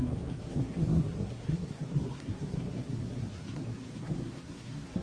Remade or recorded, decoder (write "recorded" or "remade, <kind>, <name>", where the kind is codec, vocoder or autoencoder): remade, codec, SNAC